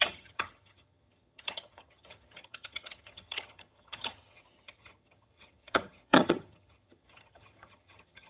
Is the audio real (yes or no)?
no